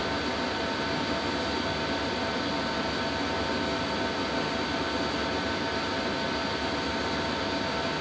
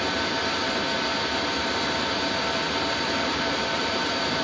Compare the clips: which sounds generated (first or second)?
second